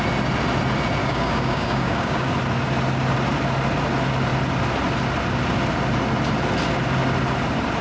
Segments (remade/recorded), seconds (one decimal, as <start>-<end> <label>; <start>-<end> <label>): 0.0-1.0 recorded; 1.0-2.3 remade; 2.3-7.8 recorded